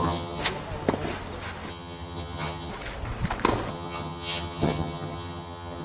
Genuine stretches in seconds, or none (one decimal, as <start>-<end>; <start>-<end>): 0.4-1.7; 2.7-3.7